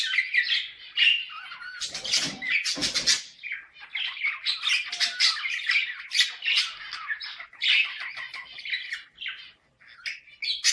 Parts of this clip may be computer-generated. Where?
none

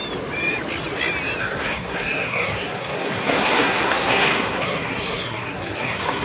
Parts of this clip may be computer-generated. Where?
1.4-6.2

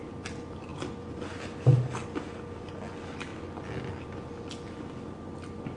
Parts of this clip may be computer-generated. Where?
none

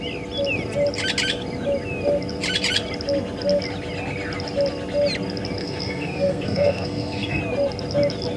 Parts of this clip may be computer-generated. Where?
5.6-7.4

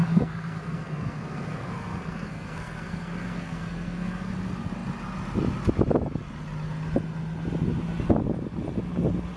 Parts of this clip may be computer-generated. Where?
0.0-4.3

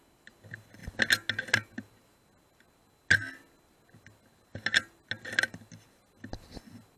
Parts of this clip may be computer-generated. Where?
none